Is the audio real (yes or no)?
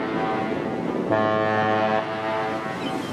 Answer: yes